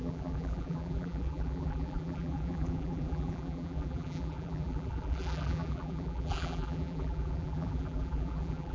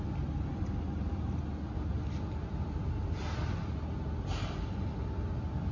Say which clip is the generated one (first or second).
first